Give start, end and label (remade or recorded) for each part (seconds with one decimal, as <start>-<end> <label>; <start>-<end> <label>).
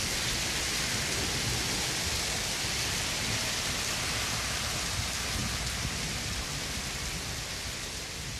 0.0-8.4 recorded